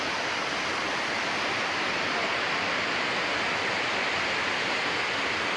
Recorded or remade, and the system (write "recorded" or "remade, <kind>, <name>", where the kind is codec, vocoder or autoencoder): recorded